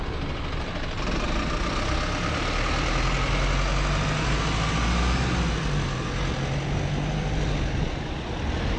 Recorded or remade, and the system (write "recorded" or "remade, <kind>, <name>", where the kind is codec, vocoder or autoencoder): recorded